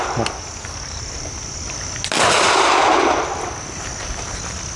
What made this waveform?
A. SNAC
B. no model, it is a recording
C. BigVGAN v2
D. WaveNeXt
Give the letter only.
B